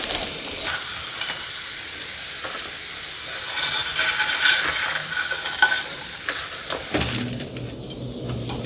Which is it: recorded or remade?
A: recorded